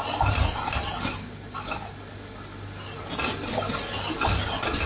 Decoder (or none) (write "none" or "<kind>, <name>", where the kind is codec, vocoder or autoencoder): none